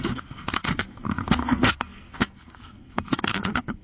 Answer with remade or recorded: remade